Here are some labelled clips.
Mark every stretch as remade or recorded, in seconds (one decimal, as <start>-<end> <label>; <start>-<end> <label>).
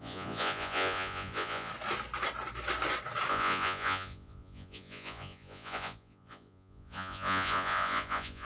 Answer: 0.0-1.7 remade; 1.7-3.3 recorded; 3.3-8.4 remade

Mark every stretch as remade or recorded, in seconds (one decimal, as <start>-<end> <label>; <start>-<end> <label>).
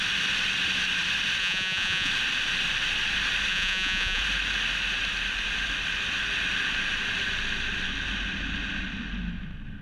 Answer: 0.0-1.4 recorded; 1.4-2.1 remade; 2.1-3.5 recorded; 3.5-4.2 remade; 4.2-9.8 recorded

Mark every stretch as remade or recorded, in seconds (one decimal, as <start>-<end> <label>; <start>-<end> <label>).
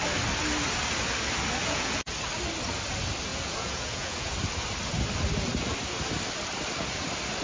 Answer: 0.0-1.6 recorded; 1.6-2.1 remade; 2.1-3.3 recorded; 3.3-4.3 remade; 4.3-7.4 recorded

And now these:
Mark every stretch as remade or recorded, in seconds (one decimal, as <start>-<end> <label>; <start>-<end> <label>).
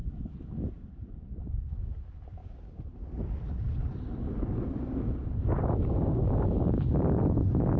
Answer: 0.0-7.8 recorded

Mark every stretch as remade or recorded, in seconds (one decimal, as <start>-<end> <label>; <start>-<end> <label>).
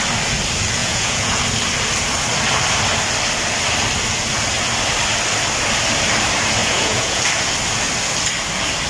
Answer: 0.0-0.8 recorded; 0.8-1.4 remade; 1.4-6.6 recorded; 6.6-7.2 remade; 7.2-8.9 recorded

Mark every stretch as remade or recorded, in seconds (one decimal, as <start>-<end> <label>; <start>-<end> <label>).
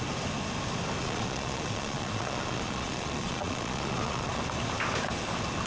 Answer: 0.0-1.0 recorded; 1.0-4.4 remade; 4.4-5.7 recorded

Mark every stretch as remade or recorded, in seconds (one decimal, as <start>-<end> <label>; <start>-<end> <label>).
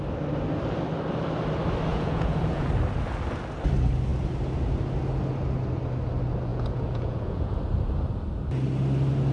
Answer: 0.0-1.9 recorded; 1.9-2.7 remade; 2.7-6.5 recorded; 6.5-7.5 remade; 7.5-9.3 recorded